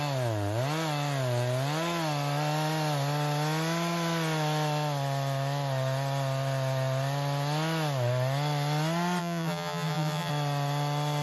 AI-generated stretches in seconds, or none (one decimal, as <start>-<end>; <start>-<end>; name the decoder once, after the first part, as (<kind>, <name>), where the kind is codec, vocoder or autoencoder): 9.2-10.3 (vocoder, BigVGAN v2)